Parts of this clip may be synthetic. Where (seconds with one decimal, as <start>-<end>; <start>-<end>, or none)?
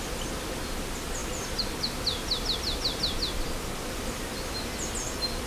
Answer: none